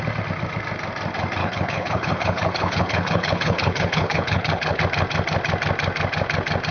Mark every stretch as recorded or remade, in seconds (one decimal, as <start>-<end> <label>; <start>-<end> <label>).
0.0-1.4 recorded; 1.4-4.8 remade; 4.8-6.7 recorded